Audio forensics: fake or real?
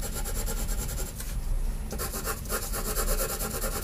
real